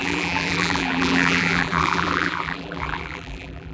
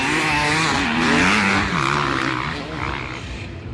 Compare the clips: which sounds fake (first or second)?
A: first